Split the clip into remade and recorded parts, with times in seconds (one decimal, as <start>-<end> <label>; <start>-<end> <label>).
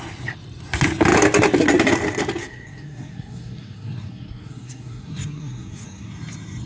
0.0-2.4 recorded; 2.4-6.1 remade; 6.1-6.7 recorded